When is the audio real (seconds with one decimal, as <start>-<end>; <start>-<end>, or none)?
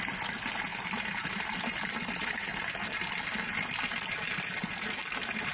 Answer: 0.0-0.7; 1.3-2.5; 3.1-5.5